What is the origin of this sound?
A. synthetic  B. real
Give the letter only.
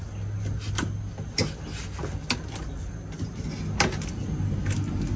B